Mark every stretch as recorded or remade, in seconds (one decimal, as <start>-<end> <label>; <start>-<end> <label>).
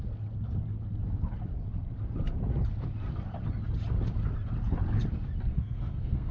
0.0-5.5 recorded; 5.5-6.3 remade